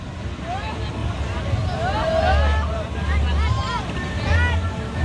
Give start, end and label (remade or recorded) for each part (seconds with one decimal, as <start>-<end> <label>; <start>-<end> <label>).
0.0-5.0 recorded